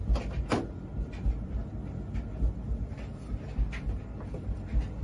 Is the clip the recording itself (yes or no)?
yes